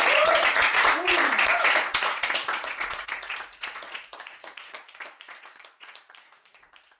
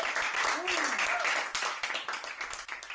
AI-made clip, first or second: first